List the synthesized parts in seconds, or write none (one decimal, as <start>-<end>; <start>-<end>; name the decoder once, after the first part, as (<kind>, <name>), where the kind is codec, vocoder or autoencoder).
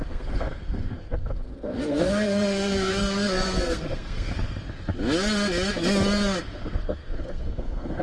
0.0-4.3 (codec, SNAC); 6.4-8.0